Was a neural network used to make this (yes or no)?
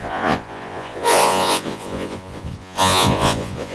yes